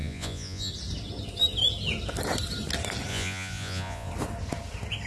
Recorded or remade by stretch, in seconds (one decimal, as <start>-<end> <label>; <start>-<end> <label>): 0.0-0.7 remade; 0.7-3.1 recorded; 3.1-4.1 remade; 4.1-5.1 recorded